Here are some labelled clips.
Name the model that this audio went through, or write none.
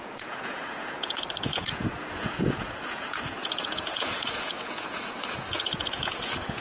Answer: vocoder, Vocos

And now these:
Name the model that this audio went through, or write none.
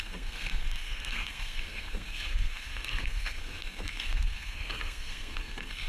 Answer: codec, SNAC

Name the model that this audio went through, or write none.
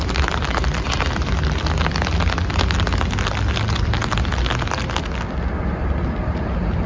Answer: none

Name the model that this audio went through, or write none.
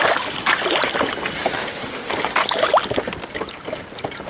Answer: none